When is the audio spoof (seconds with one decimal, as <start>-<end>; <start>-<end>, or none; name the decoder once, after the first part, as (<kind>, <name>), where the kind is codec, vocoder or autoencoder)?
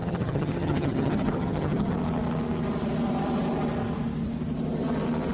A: 0.0-1.9 (vocoder, HiFi-GAN)